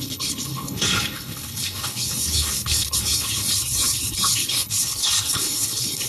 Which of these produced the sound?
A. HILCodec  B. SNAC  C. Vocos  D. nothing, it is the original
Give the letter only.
A